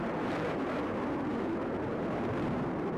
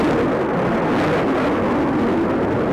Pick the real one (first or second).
second